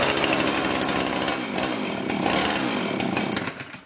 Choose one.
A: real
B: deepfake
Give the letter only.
A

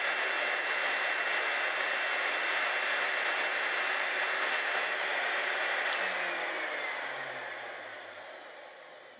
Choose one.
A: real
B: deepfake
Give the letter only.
A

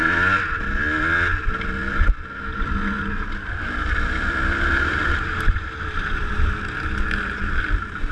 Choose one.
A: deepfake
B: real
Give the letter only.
B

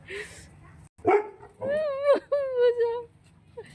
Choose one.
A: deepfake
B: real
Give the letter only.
B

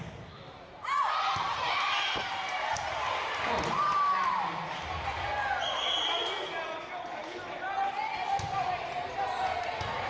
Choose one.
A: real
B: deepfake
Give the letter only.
A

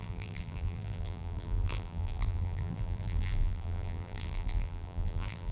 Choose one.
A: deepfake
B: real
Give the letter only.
A